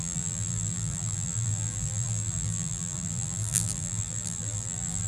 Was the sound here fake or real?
fake